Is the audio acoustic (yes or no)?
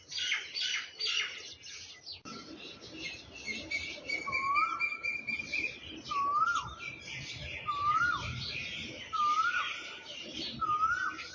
yes